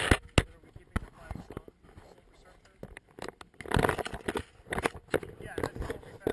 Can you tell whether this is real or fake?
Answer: real